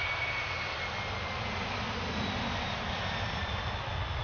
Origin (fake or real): real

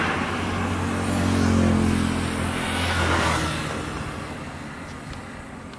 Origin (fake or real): real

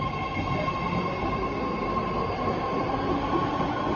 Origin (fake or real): real